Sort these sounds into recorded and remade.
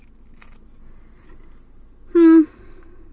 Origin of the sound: recorded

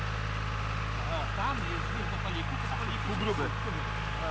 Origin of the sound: recorded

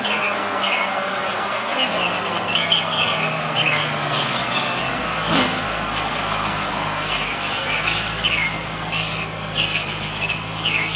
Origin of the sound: remade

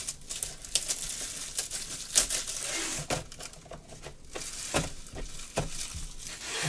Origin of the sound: recorded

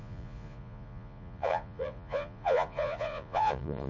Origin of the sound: remade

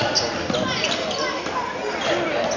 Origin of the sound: recorded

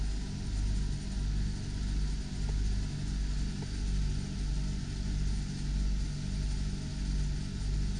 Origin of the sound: recorded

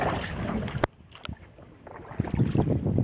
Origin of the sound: recorded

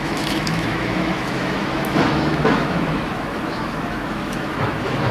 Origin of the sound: remade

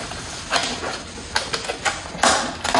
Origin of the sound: recorded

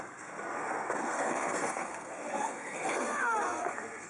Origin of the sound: remade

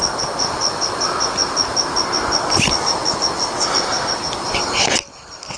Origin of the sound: recorded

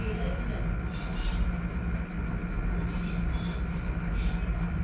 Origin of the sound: recorded